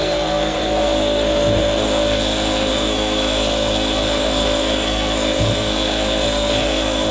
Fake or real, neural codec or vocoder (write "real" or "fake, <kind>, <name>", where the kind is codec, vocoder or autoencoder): fake, codec, SNAC